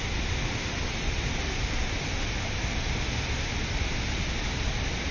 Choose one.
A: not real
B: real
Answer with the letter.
B